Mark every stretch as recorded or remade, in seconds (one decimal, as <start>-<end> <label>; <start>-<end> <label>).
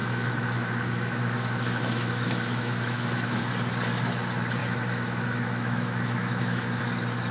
0.0-3.4 remade; 3.4-4.6 recorded; 4.6-6.8 remade; 6.8-7.3 recorded